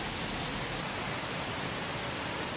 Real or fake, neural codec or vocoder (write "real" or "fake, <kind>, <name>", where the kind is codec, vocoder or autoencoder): real